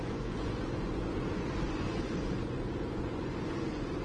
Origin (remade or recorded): remade